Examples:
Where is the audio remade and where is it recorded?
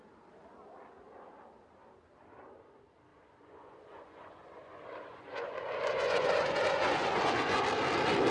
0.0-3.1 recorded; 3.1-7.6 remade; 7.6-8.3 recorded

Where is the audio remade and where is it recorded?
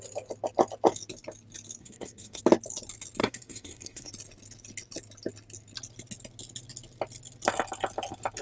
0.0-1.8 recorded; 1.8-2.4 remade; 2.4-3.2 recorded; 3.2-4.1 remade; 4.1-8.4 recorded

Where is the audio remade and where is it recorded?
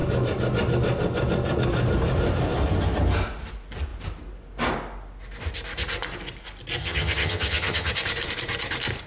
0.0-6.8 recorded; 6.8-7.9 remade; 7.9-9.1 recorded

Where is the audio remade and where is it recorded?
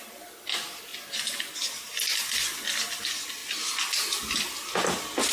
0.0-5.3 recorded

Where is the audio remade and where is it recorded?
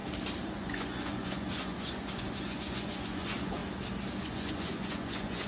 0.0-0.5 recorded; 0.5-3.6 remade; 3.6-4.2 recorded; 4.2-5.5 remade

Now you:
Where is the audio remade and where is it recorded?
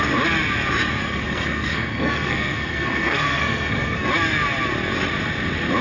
0.0-1.0 recorded; 1.0-4.1 remade; 4.1-5.8 recorded